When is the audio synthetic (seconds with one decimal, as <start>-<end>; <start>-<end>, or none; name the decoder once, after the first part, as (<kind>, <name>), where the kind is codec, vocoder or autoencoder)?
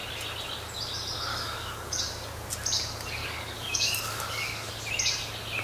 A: 1.3-2.0 (codec, DAC); 3.2-4.7